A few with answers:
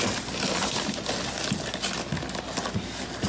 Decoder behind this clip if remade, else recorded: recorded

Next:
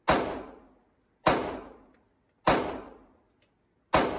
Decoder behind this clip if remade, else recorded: recorded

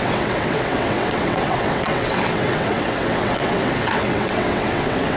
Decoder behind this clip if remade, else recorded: remade, vocoder, WaveNeXt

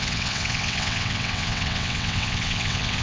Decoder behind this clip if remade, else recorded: remade, vocoder, WaveNeXt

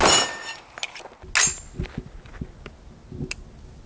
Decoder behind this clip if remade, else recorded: recorded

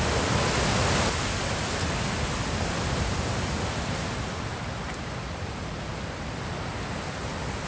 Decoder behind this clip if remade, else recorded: recorded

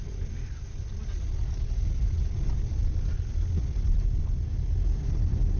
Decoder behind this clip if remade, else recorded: recorded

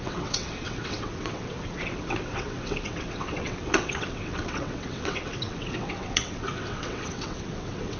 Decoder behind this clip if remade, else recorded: remade, vocoder, WaveNeXt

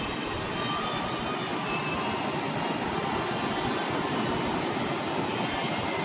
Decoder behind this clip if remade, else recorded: recorded